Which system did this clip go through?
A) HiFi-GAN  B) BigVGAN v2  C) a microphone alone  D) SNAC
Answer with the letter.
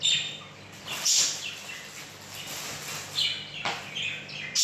C